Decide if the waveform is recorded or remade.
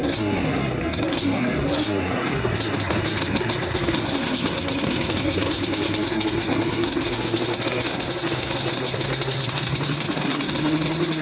remade